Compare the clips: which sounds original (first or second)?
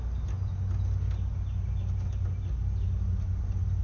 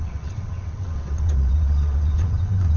first